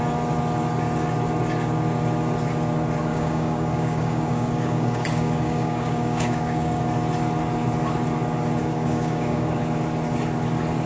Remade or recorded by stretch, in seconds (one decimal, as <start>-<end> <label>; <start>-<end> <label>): 0.0-3.1 recorded; 3.1-6.8 remade; 6.8-8.6 recorded; 8.6-9.6 remade; 9.6-10.9 recorded